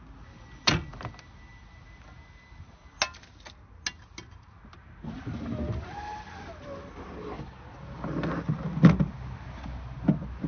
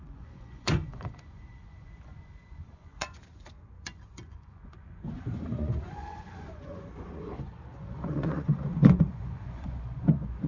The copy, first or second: second